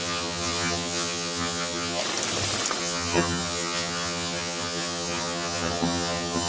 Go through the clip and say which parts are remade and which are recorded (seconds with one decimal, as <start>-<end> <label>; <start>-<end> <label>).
0.0-2.0 remade; 2.0-2.8 recorded; 2.8-6.5 remade